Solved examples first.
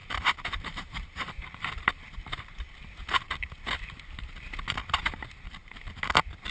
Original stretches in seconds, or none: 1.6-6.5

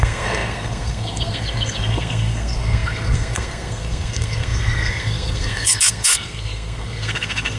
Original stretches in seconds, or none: none

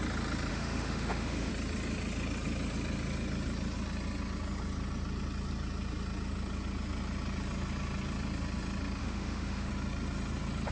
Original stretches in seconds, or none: 0.0-0.5; 1.5-9.0; 9.7-10.7

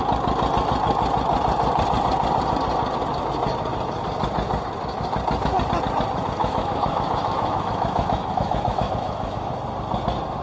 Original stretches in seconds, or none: 0.0-6.4; 9.5-10.4

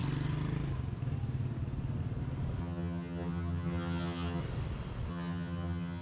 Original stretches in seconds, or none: 0.0-2.6; 4.4-5.1

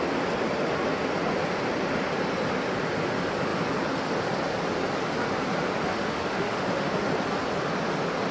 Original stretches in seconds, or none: 0.0-5.9; 7.1-8.3

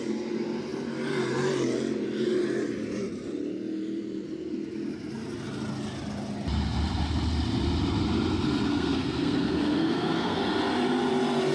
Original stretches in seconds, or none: 0.0-8.7; 10.4-11.5